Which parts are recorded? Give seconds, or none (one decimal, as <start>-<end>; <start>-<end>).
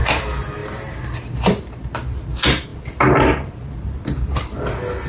0.0-0.6; 2.2-2.7; 3.5-5.1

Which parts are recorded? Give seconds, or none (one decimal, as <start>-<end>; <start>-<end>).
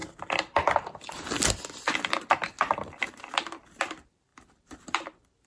1.3-4.3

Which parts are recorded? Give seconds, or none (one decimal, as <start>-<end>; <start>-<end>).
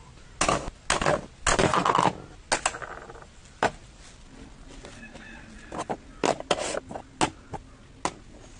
0.0-3.4; 5.7-8.6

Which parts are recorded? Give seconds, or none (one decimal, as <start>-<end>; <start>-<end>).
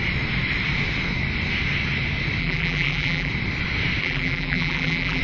0.0-2.4; 3.3-4.0